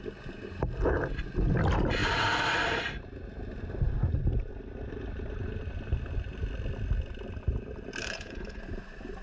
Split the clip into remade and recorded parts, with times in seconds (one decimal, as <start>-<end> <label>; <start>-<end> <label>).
0.0-8.0 recorded; 8.0-8.6 remade; 8.6-9.2 recorded